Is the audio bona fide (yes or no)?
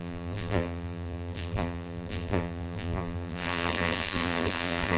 no